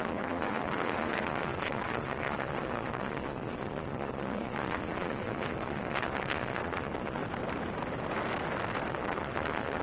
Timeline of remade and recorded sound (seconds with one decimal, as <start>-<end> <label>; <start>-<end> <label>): 0.0-7.2 remade; 7.2-8.9 recorded; 8.9-9.8 remade